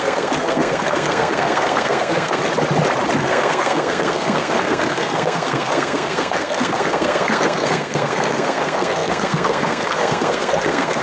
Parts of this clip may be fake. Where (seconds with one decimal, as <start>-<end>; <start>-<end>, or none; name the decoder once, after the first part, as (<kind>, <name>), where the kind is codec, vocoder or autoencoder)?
0.0-2.4 (codec, SNAC); 3.2-11.0